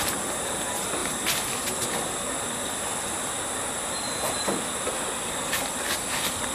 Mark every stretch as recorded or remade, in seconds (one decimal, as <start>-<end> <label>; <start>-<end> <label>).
0.0-6.5 recorded